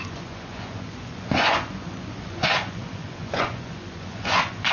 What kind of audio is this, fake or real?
fake